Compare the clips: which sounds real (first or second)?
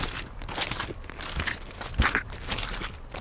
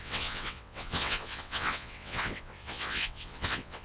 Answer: first